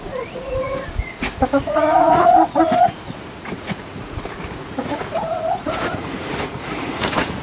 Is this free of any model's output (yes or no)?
no